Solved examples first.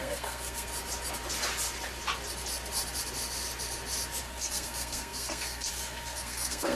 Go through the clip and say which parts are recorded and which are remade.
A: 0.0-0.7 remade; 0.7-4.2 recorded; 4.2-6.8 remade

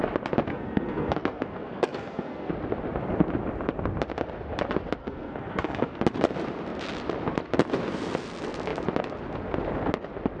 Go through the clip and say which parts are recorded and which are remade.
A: 0.0-0.5 recorded; 0.5-2.5 remade; 2.5-5.0 recorded; 5.0-6.0 remade; 6.0-10.4 recorded

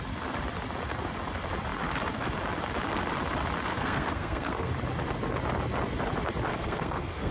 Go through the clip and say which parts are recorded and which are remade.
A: 0.0-3.7 recorded; 3.7-4.7 remade; 4.7-6.5 recorded; 6.5-7.3 remade

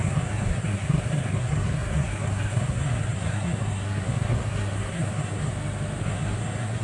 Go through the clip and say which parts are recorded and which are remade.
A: 0.0-5.5 remade; 5.5-6.0 recorded; 6.0-6.8 remade